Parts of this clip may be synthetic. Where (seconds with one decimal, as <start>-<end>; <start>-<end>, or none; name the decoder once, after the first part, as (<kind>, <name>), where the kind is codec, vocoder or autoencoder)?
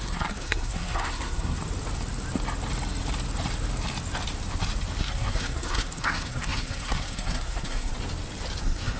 0.0-1.6 (codec, SNAC); 5.0-7.9; 8.6-9.0